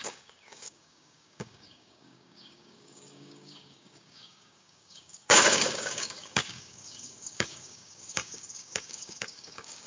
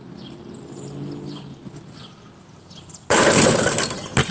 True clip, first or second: second